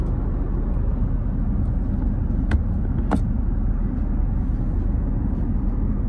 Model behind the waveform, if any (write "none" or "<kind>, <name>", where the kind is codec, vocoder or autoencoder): none